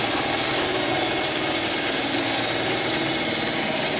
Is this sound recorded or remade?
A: recorded